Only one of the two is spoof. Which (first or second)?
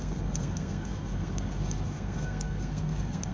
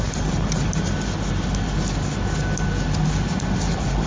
first